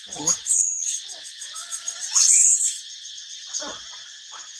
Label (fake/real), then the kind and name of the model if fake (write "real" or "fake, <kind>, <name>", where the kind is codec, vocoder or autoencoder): fake, vocoder, WaveNeXt